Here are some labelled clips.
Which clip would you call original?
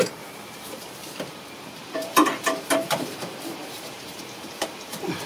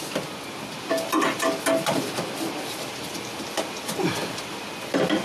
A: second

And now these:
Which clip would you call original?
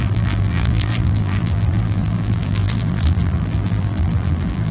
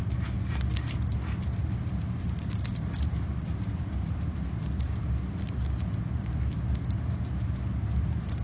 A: second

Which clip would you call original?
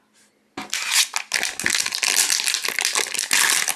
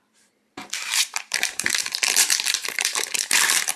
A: first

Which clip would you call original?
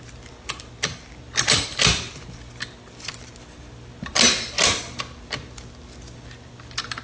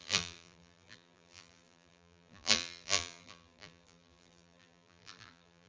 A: first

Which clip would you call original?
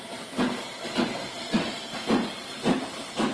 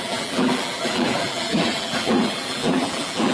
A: first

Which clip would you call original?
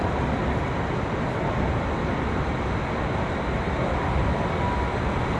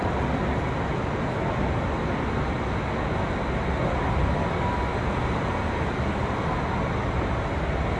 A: second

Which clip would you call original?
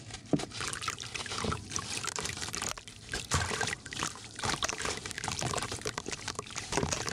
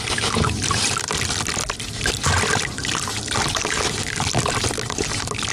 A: second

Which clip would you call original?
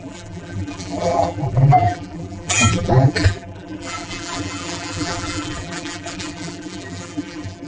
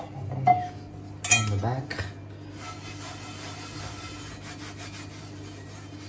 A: second